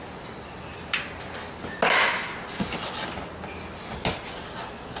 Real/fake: real